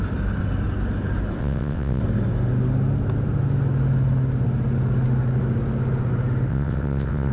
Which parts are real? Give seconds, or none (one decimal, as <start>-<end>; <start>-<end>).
0.0-1.4; 2.0-6.5